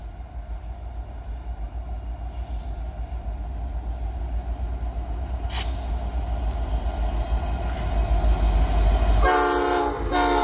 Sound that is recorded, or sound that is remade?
recorded